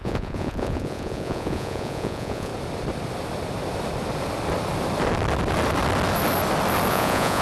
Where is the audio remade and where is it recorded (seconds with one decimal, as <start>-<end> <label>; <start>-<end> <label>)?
0.0-2.5 remade; 2.5-6.9 recorded; 6.9-7.4 remade